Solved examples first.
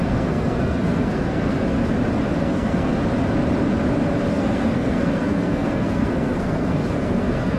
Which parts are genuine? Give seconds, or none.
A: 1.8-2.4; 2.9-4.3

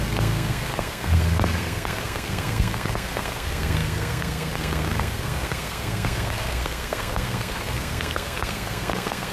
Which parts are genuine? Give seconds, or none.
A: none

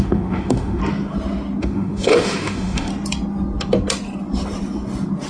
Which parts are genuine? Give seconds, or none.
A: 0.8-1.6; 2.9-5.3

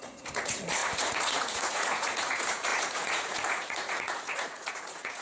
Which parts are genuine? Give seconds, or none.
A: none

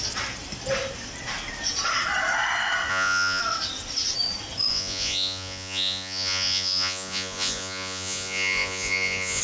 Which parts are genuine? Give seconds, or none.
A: 0.0-2.9; 3.4-4.7

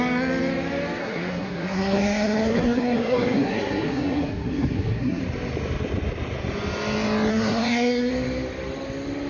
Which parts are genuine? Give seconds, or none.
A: 0.0-1.0; 5.2-7.3; 8.1-9.3